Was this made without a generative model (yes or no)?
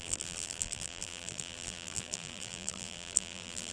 no